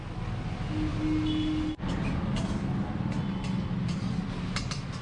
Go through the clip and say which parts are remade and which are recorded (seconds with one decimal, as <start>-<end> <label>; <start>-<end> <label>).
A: 0.0-5.0 recorded